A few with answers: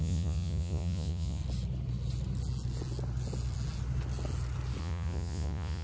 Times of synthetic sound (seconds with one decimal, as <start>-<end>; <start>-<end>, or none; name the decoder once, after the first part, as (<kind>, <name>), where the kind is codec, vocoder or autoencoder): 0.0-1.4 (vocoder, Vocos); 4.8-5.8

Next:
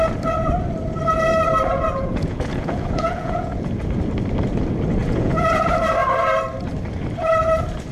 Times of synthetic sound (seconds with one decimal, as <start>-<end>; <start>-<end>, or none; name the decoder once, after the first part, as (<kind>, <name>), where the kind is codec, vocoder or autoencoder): 1.7-3.7 (vocoder, Vocos); 5.0-5.5

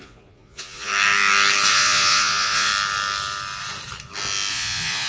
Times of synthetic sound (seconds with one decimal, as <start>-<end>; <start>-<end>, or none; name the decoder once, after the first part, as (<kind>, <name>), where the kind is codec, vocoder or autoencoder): 0.0-0.9 (vocoder, Vocos); 1.7-2.7; 4.5-5.1

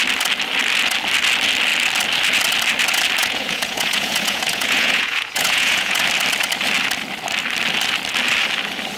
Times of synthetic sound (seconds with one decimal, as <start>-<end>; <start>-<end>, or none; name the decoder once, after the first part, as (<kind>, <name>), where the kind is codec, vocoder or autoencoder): 3.2-6.0 (vocoder, Vocos)

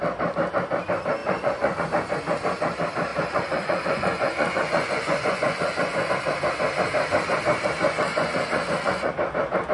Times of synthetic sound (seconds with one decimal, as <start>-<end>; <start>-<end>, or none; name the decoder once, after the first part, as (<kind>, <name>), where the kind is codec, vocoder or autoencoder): 1.2-1.8 (vocoder, Vocos); 3.1-6.1; 8.1-9.1

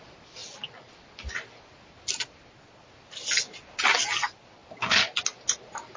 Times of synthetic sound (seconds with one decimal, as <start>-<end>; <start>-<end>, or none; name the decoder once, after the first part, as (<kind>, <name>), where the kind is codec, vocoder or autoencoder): none

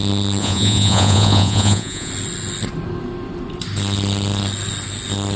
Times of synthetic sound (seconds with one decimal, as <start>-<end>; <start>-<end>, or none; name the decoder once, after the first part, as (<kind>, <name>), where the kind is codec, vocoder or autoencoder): 0.4-2.1 (vocoder, Vocos)